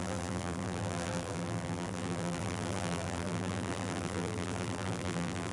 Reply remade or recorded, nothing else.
remade